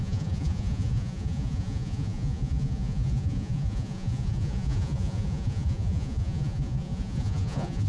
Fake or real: fake